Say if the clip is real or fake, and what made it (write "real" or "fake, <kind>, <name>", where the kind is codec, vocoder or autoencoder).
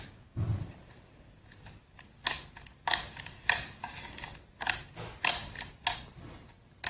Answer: real